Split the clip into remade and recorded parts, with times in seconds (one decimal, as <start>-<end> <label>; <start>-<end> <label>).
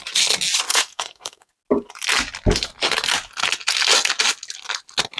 0.0-0.7 recorded; 0.7-1.5 remade; 1.5-5.2 recorded